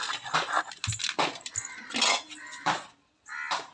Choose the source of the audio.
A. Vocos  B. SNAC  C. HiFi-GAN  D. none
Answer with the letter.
D